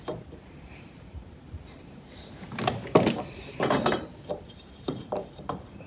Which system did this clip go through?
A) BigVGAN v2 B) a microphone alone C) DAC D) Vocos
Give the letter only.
A